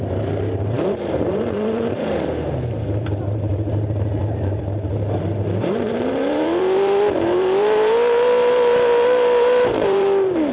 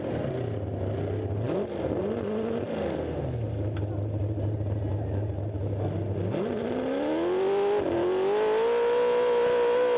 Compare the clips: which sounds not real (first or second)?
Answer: first